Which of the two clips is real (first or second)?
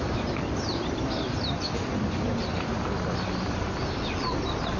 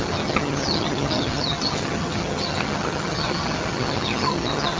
first